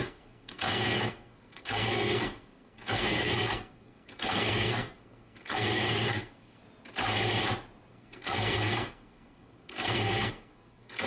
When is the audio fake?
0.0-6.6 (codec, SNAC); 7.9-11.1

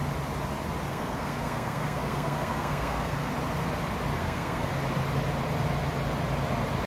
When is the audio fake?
0.9-3.3 (codec, SNAC); 4.2-4.7

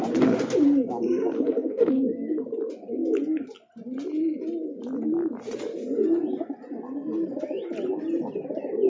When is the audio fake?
1.2-1.9 (codec, SNAC)

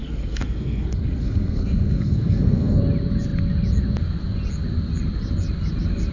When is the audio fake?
0.0-2.8 (codec, SNAC)